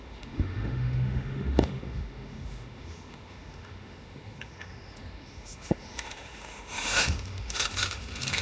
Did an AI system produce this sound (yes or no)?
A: yes